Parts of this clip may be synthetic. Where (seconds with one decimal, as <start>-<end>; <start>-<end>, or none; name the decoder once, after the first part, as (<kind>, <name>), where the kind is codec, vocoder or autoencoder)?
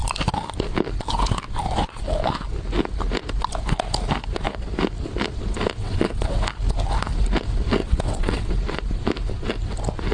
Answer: 5.8-6.4 (vocoder, WaveNeXt); 7.8-8.5